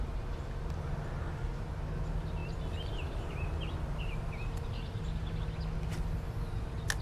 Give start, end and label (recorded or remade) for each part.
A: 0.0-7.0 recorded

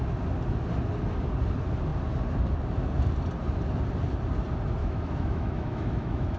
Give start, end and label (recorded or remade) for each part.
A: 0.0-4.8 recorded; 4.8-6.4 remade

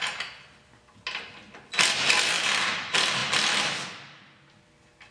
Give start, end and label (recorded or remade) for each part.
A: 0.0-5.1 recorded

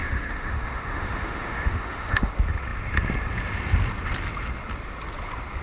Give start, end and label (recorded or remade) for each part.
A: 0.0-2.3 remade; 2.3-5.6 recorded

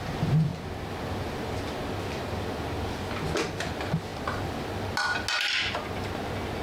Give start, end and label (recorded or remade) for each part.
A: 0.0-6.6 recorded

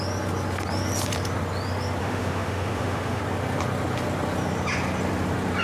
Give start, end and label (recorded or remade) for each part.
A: 0.0-2.0 recorded; 2.0-3.2 remade; 3.2-5.6 recorded

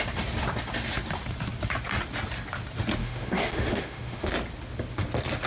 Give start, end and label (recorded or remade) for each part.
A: 0.0-3.0 recorded; 3.0-4.3 remade; 4.3-5.5 recorded

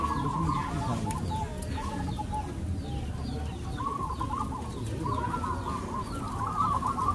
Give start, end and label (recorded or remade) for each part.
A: 0.0-7.1 recorded